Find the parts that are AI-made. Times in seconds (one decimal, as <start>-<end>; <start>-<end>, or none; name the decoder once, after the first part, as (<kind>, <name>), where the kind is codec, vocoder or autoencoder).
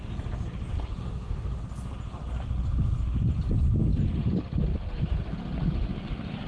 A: 1.0-1.6 (autoencoder, DAC-VAE)